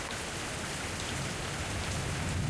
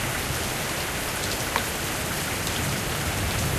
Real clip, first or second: first